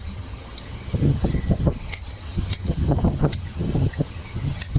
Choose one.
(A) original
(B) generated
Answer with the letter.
B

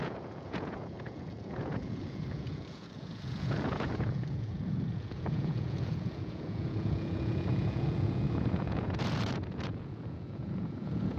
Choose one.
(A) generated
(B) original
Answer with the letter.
A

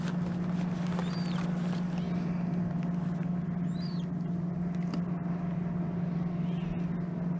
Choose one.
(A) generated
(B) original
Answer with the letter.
B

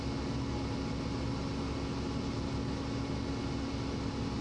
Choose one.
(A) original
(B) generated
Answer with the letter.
A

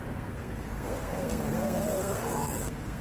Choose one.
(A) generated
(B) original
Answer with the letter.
A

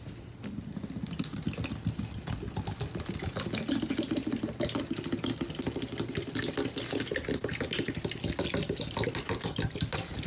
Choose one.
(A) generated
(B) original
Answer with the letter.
B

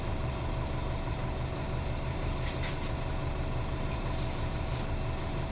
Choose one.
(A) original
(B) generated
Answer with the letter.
B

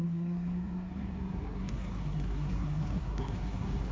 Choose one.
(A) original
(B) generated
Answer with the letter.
B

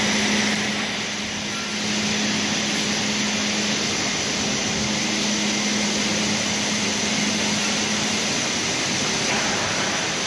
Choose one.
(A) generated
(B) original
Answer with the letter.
B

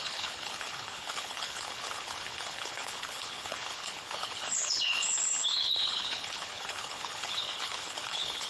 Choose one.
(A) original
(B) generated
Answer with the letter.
B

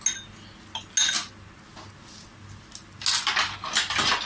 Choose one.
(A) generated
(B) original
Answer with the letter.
B